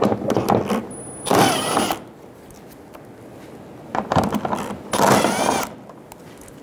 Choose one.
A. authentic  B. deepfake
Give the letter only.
A